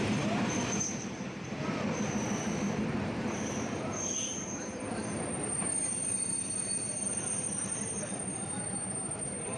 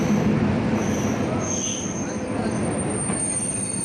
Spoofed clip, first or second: first